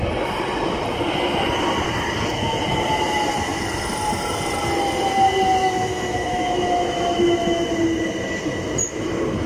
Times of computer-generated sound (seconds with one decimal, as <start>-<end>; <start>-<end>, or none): 5.6-7.7